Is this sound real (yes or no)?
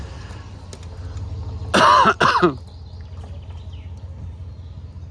yes